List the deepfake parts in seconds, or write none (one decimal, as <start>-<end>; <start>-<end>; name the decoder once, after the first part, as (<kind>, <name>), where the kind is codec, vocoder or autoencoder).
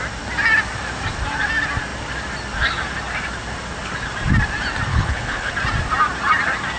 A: 4.9-5.5 (codec, HILCodec)